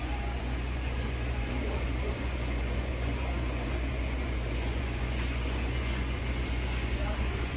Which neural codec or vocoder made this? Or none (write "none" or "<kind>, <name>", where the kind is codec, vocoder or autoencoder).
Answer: vocoder, Vocos